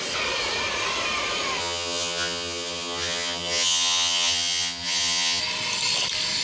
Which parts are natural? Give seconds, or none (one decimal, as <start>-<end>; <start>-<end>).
0.0-1.6; 5.4-6.4